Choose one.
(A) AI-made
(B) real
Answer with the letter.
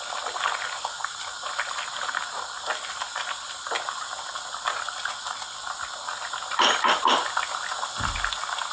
B